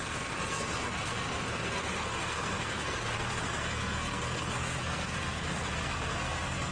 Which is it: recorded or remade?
remade